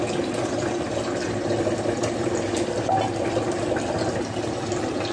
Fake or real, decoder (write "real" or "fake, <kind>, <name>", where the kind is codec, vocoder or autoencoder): real